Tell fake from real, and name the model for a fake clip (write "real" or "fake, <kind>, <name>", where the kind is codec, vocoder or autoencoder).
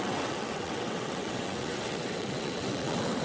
fake, vocoder, WaveNeXt